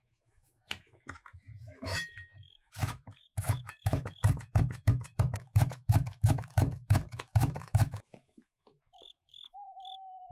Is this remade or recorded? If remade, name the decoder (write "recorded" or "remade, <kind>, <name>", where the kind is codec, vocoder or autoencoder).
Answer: remade, autoencoder, DAC-VAE